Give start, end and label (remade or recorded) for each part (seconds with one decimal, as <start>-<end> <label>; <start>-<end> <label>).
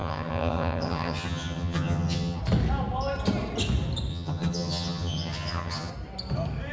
0.0-2.4 remade; 2.4-4.1 recorded; 4.1-5.9 remade; 5.9-6.7 recorded